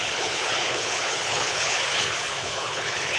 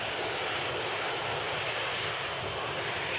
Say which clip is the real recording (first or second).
second